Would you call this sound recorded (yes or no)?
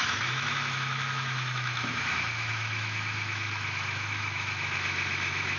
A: no